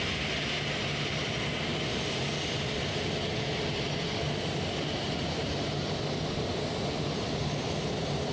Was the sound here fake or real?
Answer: real